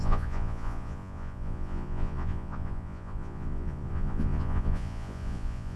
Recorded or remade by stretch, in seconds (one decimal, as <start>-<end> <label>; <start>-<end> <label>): 0.0-5.8 remade